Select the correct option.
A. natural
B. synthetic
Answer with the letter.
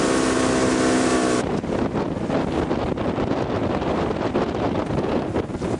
A